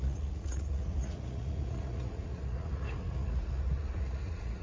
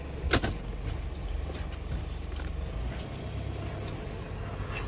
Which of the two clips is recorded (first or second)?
second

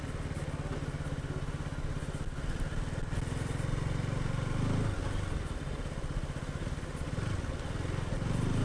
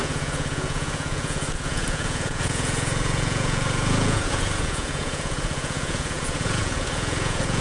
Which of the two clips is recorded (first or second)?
first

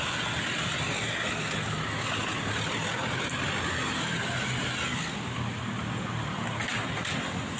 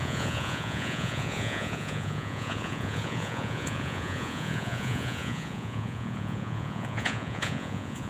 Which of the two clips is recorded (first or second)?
first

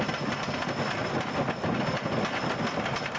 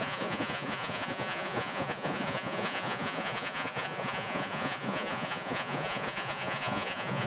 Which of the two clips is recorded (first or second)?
first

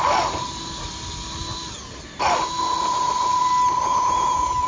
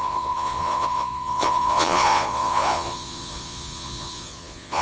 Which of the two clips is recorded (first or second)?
first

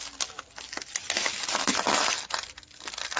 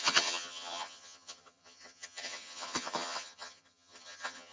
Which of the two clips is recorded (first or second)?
first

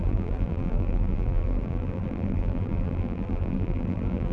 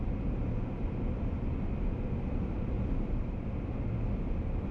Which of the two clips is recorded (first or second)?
second